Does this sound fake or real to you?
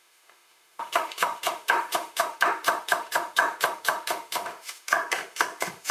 fake